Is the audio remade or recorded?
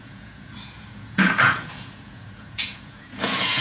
remade